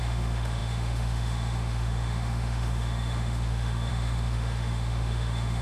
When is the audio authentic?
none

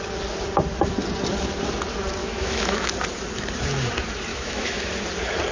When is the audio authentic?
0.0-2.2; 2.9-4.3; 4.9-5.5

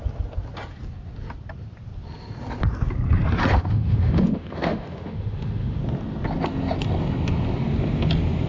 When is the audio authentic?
0.0-3.5; 5.8-8.5

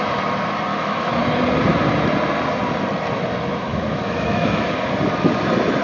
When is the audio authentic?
0.0-0.7; 1.2-3.5; 4.7-5.8

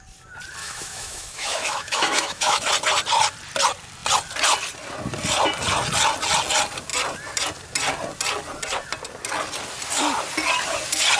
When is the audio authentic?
0.0-0.6; 2.7-11.2

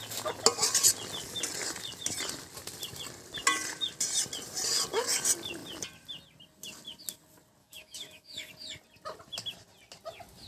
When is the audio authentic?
0.0-7.6; 8.5-10.5

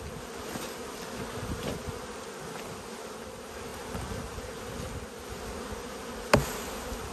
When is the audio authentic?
0.0-7.1

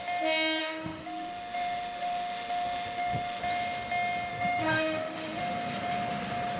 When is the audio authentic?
0.0-0.6; 3.4-4.3; 5.4-6.6